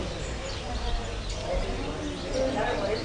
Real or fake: real